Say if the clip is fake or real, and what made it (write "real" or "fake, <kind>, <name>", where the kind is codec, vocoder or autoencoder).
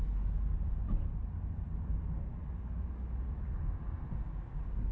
real